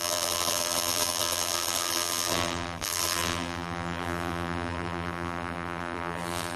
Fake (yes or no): yes